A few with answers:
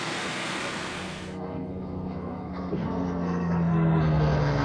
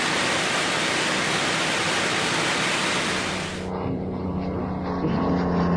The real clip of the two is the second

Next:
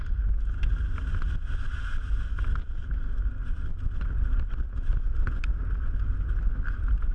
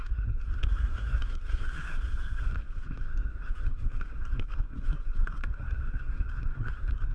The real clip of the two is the first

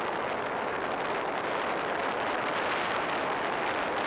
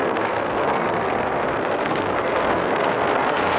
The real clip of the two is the first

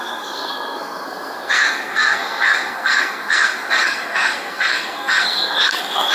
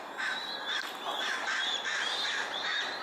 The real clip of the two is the second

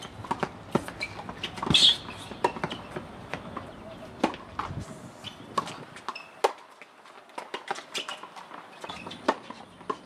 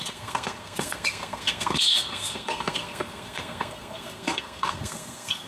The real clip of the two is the first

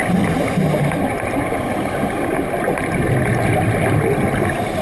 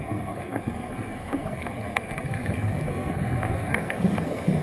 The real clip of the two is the first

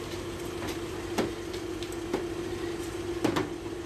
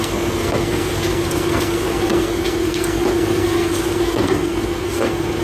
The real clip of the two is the first